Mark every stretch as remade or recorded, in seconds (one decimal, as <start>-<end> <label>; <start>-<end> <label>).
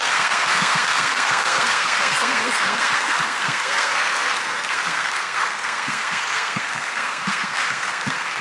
0.0-8.4 remade